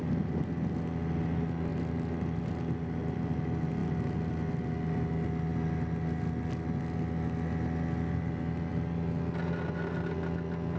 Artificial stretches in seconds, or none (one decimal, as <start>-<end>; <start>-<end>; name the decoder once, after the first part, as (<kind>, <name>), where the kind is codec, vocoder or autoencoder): none